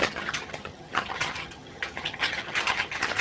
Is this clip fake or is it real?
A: fake